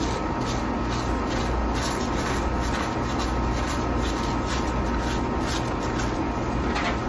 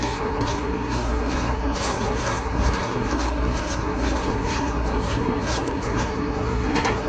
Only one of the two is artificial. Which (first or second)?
second